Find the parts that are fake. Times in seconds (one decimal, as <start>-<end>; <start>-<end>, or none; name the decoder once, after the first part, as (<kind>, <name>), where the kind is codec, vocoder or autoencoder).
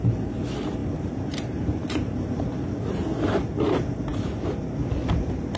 0.8-2.4 (vocoder, BigVGAN v2)